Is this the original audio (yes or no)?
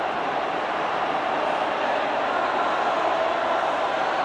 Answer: yes